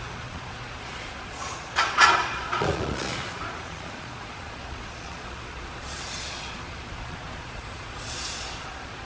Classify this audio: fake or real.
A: fake